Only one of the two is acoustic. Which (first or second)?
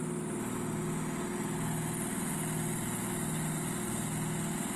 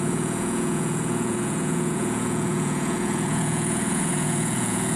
first